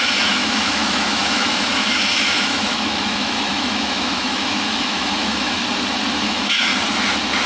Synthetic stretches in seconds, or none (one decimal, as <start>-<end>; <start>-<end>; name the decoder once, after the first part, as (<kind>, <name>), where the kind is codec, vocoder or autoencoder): 0.0-5.6 (autoencoder, DAC-VAE); 6.2-6.7